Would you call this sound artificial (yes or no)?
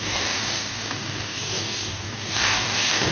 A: yes